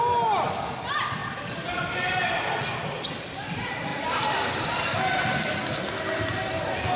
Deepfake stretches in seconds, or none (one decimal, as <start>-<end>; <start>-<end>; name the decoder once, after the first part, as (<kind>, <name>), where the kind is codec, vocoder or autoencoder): none